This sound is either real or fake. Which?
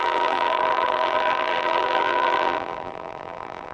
fake